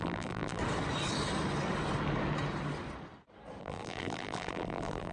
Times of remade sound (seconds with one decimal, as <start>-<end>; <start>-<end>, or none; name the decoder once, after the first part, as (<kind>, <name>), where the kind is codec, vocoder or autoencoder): 0.0-0.6 (vocoder, BigVGAN v2); 3.6-5.1